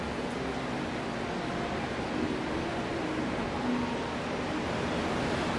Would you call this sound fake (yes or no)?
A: no